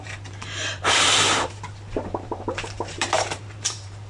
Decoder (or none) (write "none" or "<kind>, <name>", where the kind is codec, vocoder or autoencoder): vocoder, BigVGAN v2